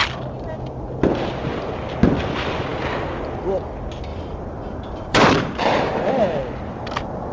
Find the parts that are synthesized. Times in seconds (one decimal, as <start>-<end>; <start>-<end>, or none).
4.1-6.1

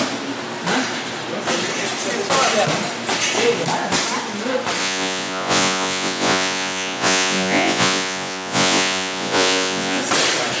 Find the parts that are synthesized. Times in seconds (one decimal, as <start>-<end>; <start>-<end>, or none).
4.8-10.0

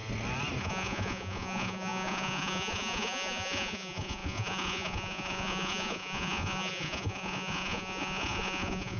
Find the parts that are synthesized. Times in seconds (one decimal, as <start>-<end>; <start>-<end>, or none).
0.6-9.0

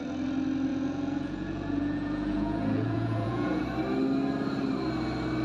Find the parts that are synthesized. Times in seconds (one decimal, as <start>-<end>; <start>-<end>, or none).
0.7-3.6

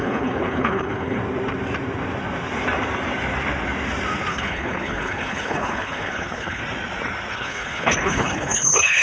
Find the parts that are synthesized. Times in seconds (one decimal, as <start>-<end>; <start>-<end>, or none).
0.0-1.2; 4.3-6.6; 7.3-9.0

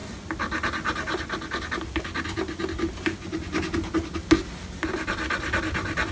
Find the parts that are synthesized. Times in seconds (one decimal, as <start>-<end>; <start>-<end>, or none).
none

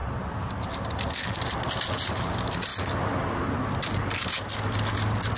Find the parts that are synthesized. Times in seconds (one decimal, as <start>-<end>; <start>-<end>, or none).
none

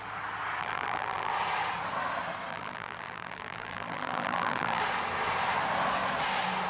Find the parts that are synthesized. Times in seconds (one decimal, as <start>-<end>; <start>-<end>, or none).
0.6-1.3; 2.5-4.8